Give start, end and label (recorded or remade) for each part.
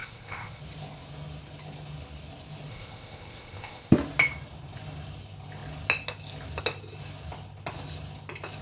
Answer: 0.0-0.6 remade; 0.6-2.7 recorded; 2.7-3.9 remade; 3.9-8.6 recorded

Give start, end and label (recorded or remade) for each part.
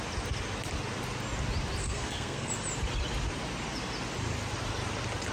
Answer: 0.0-1.8 recorded; 1.8-2.5 remade; 2.5-5.3 recorded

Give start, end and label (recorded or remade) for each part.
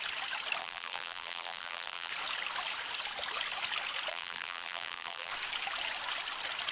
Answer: 0.0-0.6 recorded; 0.6-2.1 remade; 2.1-4.1 recorded; 4.1-5.3 remade; 5.3-6.7 recorded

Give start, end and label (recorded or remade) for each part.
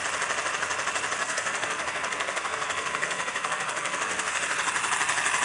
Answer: 0.0-1.2 recorded; 1.2-4.4 remade; 4.4-5.4 recorded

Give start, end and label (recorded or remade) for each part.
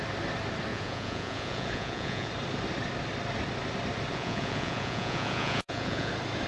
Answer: 0.0-0.7 recorded; 0.7-2.3 remade; 2.3-4.1 recorded; 4.1-6.1 remade; 6.1-6.5 recorded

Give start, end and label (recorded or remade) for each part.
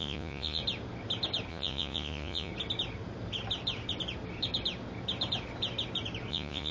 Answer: 0.0-0.6 remade; 0.6-1.5 recorded; 1.5-2.5 remade; 2.5-6.3 recorded; 6.3-6.7 remade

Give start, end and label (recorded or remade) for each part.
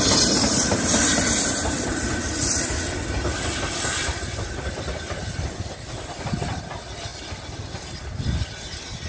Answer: 0.0-9.1 recorded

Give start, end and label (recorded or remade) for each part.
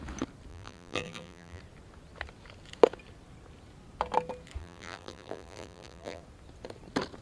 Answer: 0.0-0.5 recorded; 0.5-1.6 remade; 1.6-4.6 recorded; 4.6-6.2 remade; 6.2-7.2 recorded